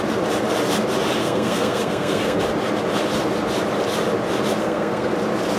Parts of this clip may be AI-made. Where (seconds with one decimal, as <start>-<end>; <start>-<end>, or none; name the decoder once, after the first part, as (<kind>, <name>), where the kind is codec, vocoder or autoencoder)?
1.2-2.4 (codec, SNAC); 4.6-5.1